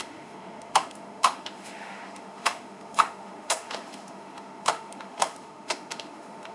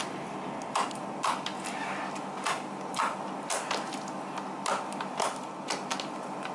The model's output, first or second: first